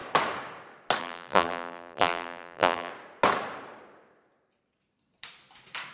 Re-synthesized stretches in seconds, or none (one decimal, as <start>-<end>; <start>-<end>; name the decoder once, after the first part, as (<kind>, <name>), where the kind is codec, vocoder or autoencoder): 1.0-2.9 (vocoder, BigVGAN v2)